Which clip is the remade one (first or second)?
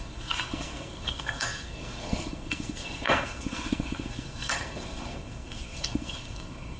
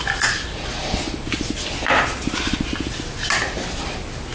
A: first